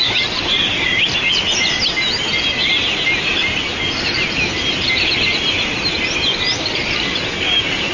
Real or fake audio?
real